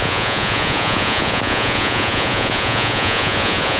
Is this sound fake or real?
fake